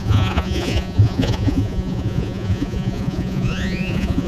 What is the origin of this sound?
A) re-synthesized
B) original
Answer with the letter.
A